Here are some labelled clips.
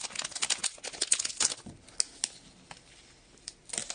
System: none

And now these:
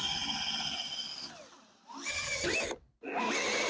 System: none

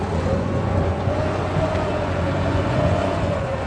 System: vocoder, Vocos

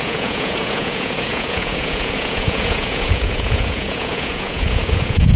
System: vocoder, Vocos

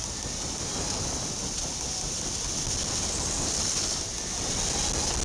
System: none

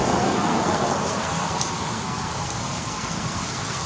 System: codec, SNAC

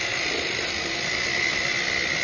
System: none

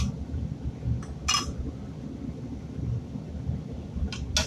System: none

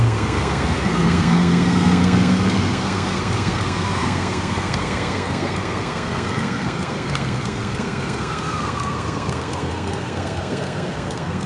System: codec, SNAC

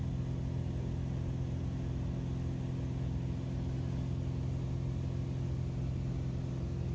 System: none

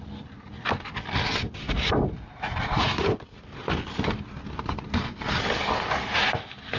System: none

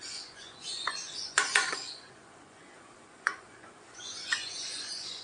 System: vocoder, Vocos